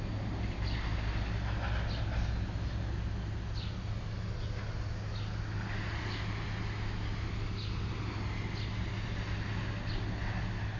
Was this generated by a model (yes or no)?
no